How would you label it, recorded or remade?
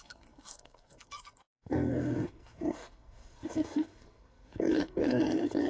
remade